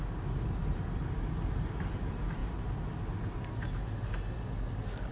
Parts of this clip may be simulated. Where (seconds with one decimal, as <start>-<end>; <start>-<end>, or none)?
none